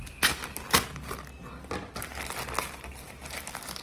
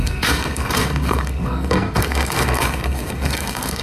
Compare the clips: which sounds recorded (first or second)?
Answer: first